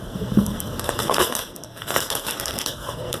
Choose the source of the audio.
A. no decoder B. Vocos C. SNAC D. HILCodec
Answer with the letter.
C